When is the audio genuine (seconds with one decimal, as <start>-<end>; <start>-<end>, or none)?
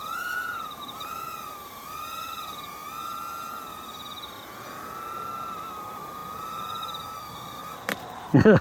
2.8-5.8; 7.6-8.2